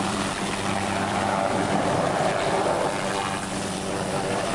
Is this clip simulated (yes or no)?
yes